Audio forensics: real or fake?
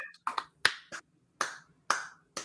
real